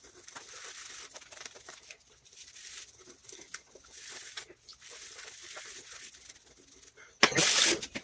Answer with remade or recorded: recorded